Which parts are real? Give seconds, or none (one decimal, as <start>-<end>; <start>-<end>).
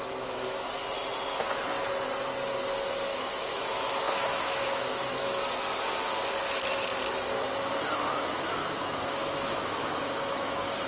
0.0-3.1; 5.4-8.6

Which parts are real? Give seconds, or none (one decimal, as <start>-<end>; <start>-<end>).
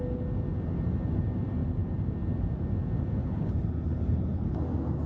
0.0-3.2; 4.6-5.1